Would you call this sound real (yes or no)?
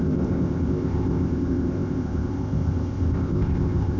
no